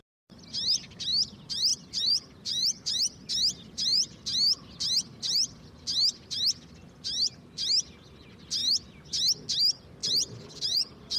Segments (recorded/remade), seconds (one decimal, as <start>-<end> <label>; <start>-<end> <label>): 0.0-1.7 recorded; 1.7-3.3 remade; 3.3-5.1 recorded; 5.1-5.7 remade; 5.7-10.0 recorded; 10.0-11.2 remade

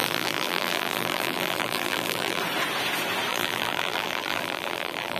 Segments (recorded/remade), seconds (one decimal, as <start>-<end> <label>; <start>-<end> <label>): 0.0-2.4 remade; 2.4-3.3 recorded; 3.3-5.2 remade

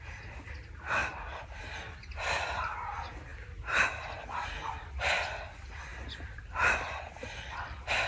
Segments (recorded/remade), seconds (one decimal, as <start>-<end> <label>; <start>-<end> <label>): 0.0-5.9 recorded; 5.9-6.4 remade; 6.4-8.1 recorded

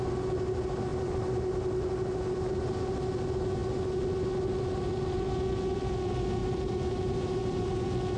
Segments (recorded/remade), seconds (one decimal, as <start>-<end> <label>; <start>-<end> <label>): 0.0-6.4 recorded; 6.4-7.7 remade; 7.7-8.2 recorded

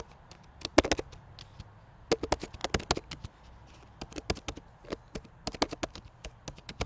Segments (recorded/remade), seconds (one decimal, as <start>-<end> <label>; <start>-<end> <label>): 0.0-6.9 recorded